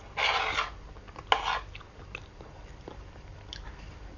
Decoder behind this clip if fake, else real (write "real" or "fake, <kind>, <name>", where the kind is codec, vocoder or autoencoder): real